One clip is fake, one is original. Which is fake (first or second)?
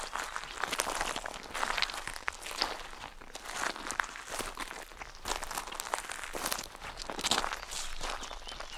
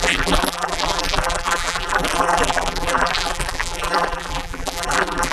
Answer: second